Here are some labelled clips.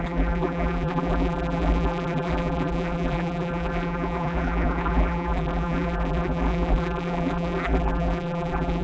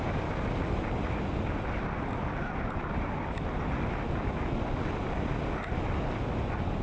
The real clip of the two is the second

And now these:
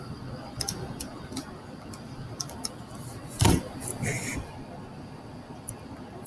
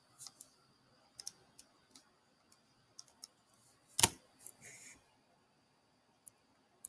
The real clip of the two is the second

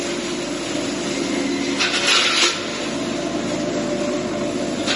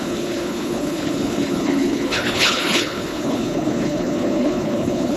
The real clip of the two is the first